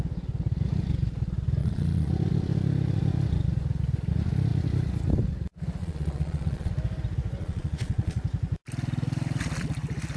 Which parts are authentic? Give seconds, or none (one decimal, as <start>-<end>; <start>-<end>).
0.0-1.6; 2.1-5.8; 6.7-7.4; 8.2-10.2